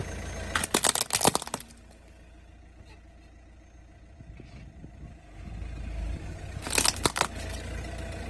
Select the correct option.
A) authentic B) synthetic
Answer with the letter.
A